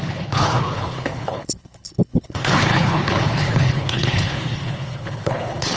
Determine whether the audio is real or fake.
fake